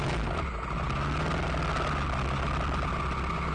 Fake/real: real